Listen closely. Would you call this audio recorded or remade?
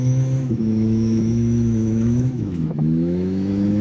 remade